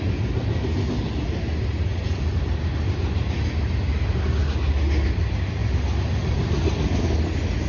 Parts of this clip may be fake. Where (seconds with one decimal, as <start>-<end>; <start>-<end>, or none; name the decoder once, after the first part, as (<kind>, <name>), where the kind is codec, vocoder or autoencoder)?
none